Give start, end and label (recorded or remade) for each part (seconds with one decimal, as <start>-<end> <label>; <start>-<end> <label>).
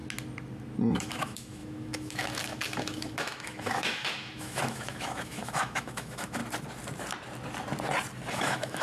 0.0-0.9 recorded; 0.9-6.4 remade; 6.4-8.3 recorded; 8.3-8.8 remade